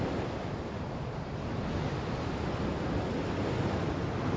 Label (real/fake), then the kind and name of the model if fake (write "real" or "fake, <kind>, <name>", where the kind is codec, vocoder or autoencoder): real